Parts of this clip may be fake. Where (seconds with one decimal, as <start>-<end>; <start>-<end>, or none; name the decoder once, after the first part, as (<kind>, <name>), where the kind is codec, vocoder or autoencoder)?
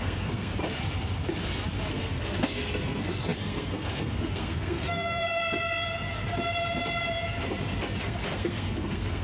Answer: 0.0-0.5 (codec, SNAC); 1.9-5.4; 8.0-9.2